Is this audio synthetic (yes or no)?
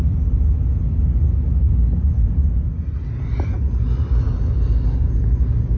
no